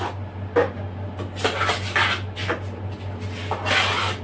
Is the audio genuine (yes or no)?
yes